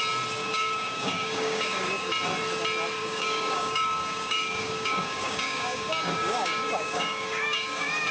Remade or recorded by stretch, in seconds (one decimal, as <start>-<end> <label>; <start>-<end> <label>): 0.0-0.4 recorded; 0.4-2.1 remade; 2.1-3.0 recorded; 3.0-8.1 remade